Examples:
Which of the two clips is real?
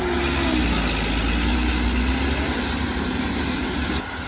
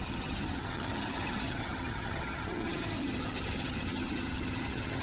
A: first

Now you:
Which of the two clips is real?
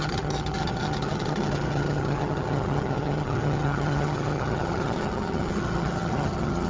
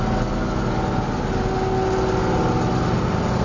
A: second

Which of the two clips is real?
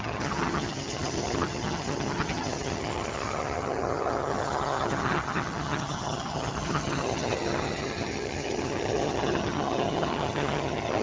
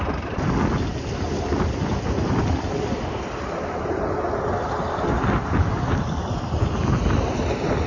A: second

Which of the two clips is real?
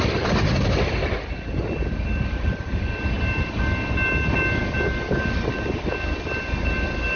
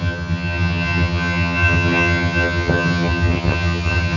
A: first